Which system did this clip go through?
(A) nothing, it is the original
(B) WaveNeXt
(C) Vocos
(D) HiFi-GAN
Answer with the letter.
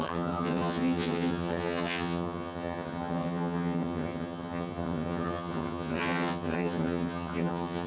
D